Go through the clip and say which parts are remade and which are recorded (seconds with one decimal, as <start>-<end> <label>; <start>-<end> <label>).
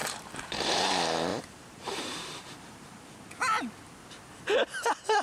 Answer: 0.0-0.9 remade; 0.9-1.3 recorded; 1.3-2.6 remade; 2.6-5.2 recorded